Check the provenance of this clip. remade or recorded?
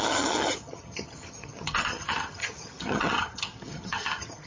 remade